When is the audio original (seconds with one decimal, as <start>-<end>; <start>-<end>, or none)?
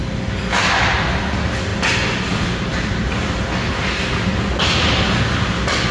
0.0-5.9